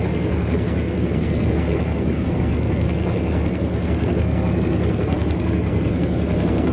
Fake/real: fake